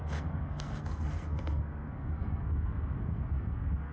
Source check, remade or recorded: remade